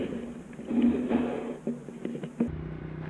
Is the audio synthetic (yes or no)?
no